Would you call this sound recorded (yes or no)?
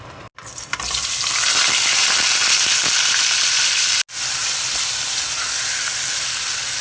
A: yes